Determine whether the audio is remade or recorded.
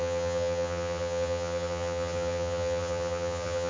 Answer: remade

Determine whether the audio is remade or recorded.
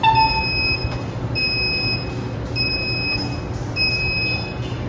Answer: recorded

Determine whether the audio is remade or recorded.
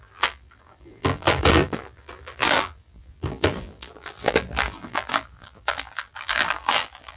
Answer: remade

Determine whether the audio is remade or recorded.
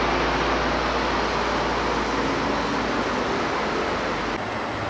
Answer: recorded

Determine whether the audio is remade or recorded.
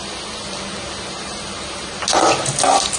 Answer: recorded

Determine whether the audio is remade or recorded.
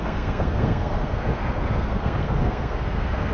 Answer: remade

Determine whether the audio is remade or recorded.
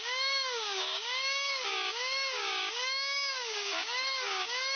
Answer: remade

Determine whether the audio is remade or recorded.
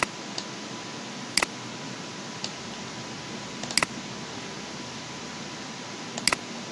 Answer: recorded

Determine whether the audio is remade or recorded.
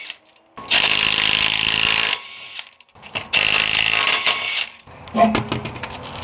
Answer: recorded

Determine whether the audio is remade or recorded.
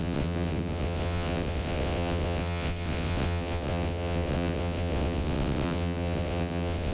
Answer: remade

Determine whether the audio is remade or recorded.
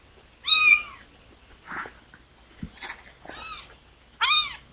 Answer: recorded